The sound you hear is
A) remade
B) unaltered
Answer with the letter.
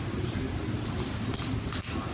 B